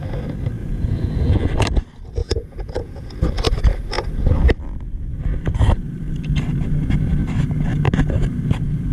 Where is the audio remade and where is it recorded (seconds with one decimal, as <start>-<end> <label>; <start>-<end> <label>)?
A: 0.0-0.6 recorded; 0.6-1.5 remade; 1.5-2.2 recorded; 2.2-3.1 remade; 3.1-8.9 recorded